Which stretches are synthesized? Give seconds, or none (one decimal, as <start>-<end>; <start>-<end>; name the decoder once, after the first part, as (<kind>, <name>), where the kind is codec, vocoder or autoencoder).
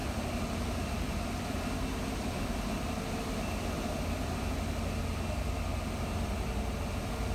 0.0-4.4 (vocoder, BigVGAN v2)